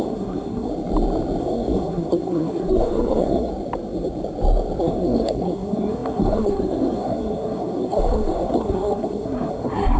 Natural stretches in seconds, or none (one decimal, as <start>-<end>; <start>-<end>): 0.7-1.4; 3.5-4.8

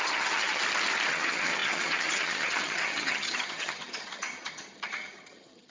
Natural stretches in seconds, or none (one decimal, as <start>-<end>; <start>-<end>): 0.6-1.1

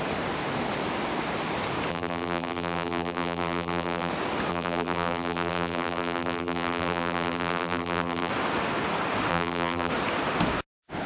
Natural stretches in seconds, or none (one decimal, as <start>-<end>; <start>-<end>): 0.0-1.9; 4.1-4.5; 8.3-9.3; 9.9-11.1

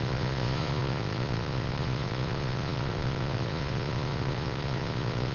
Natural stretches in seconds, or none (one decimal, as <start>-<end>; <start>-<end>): none

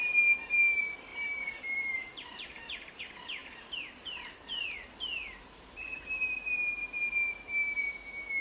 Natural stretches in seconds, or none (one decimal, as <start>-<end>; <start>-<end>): 0.0-1.1; 3.0-3.4; 6.3-8.4

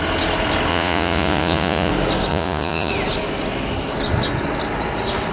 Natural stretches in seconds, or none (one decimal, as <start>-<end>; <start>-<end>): 0.0-0.7; 1.9-2.3; 2.9-5.3